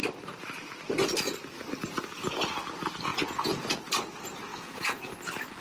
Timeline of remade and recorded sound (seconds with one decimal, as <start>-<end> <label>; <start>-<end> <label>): 0.0-3.1 recorded; 3.1-3.9 remade; 3.9-4.5 recorded; 4.5-5.1 remade; 5.1-5.6 recorded